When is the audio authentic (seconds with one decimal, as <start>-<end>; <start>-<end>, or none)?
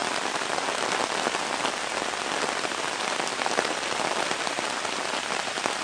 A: 0.0-5.8